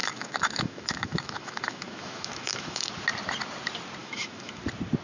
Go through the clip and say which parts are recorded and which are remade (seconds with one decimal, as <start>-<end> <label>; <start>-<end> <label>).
0.0-2.9 remade; 2.9-4.0 recorded; 4.0-4.6 remade; 4.6-5.0 recorded